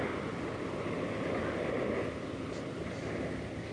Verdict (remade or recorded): recorded